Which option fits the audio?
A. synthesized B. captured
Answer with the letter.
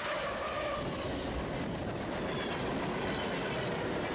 B